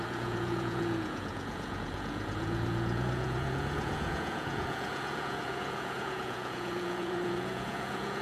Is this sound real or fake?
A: fake